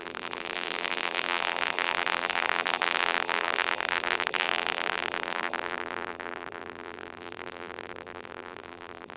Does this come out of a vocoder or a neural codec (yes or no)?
yes